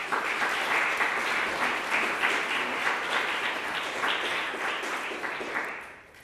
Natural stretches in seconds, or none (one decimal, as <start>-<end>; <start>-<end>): 0.6-6.2